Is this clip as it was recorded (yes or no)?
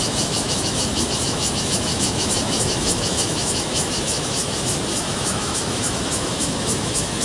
no